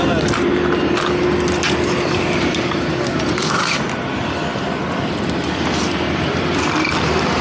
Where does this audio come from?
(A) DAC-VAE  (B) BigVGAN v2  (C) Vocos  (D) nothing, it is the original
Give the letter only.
D